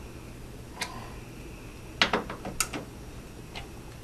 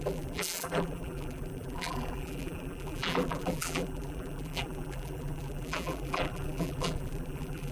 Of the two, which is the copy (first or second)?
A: second